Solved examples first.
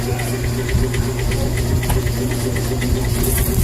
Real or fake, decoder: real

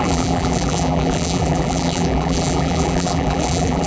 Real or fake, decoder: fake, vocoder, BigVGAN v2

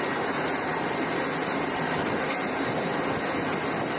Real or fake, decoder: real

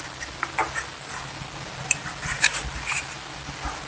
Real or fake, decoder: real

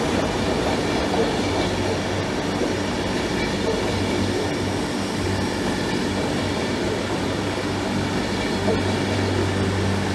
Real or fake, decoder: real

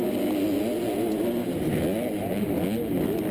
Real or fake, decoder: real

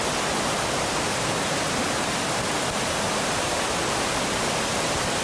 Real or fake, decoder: real